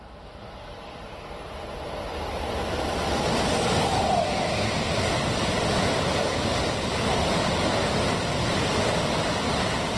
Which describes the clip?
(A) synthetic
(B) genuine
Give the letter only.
B